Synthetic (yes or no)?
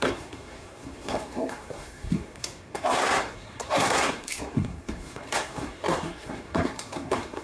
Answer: yes